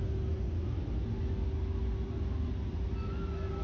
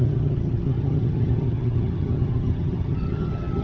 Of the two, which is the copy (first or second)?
second